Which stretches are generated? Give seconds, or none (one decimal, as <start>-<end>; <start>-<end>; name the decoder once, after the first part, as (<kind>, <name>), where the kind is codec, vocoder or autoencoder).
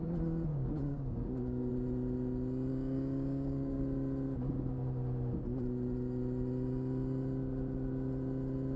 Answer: 0.5-1.7 (codec, DAC); 2.7-3.8